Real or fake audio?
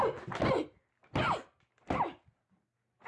real